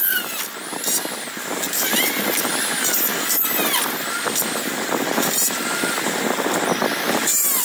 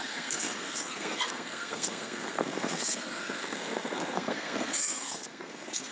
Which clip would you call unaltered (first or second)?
first